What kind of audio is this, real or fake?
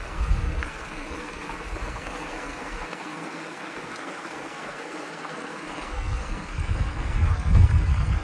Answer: fake